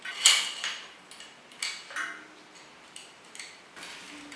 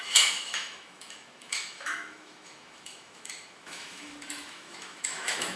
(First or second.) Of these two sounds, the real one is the first